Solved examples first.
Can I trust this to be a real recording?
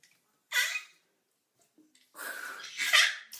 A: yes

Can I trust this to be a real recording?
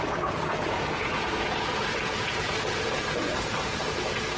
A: no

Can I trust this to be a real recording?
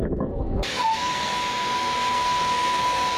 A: no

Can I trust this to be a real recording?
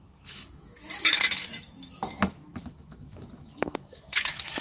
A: no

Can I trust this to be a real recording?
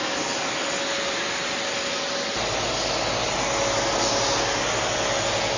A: yes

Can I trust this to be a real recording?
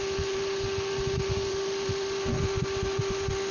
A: yes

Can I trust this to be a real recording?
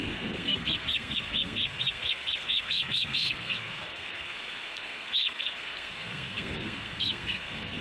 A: no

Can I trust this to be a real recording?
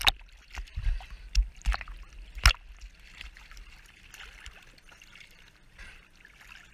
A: yes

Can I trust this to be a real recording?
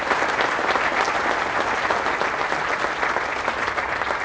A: yes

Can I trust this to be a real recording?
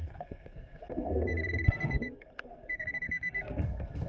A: no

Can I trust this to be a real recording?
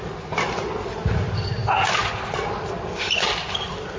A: yes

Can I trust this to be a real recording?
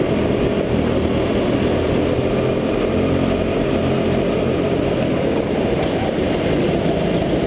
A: yes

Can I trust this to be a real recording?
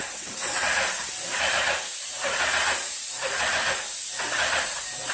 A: yes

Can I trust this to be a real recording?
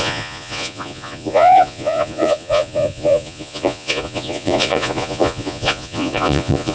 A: no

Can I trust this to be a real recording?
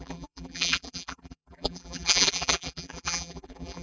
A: no